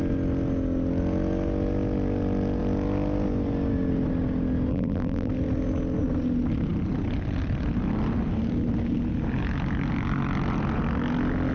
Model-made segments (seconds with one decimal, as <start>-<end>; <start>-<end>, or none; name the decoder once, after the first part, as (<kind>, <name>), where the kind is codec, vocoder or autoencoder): 4.7-5.3 (vocoder, BigVGAN v2)